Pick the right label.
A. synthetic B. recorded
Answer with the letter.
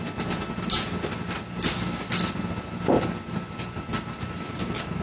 B